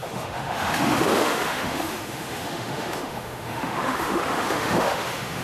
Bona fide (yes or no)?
no